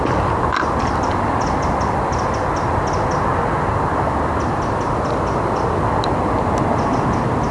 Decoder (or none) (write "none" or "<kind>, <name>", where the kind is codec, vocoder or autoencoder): none